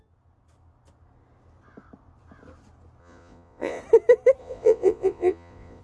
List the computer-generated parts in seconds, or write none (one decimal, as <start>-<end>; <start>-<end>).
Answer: 3.0-3.8; 4.4-5.8